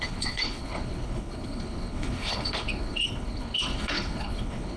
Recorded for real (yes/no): no